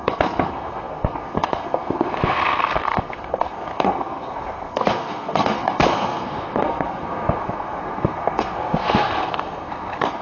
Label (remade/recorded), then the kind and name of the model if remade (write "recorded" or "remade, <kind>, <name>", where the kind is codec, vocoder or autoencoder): remade, codec, SNAC